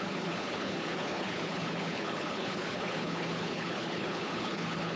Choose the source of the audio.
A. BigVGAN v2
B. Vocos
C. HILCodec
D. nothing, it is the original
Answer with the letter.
C